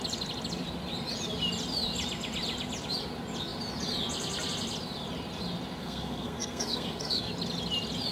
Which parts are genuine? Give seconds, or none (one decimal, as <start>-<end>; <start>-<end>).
0.0-5.8; 7.3-8.1